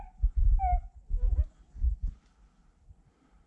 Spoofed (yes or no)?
no